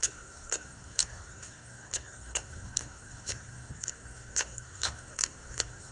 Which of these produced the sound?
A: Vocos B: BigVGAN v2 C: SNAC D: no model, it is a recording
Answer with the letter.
C